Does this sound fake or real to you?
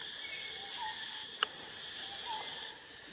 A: real